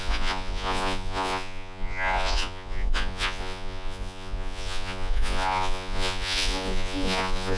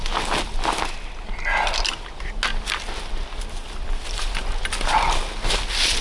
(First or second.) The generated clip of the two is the first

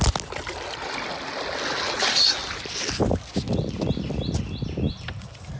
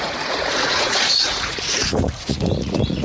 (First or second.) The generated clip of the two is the second